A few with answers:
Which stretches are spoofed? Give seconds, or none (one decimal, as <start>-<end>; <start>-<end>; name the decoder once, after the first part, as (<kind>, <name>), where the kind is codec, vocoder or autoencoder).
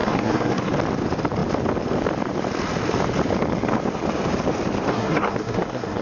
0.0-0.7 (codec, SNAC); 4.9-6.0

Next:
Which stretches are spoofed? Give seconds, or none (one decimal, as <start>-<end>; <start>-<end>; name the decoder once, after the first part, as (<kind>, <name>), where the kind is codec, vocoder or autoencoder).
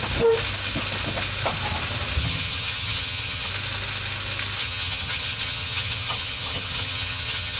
2.2-3.5 (vocoder, HiFi-GAN); 4.6-7.6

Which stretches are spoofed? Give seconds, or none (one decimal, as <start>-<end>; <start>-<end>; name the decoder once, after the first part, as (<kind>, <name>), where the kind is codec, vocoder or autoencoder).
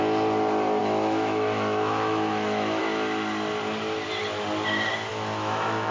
0.8-2.8 (autoencoder, DAC-VAE); 5.1-5.9